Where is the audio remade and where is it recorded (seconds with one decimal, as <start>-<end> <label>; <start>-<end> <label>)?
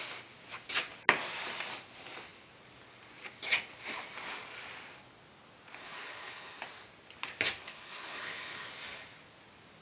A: 0.0-5.8 recorded; 5.8-6.6 remade; 6.6-7.6 recorded; 7.6-8.7 remade; 8.7-9.8 recorded